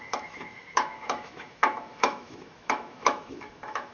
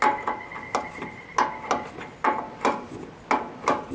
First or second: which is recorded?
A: second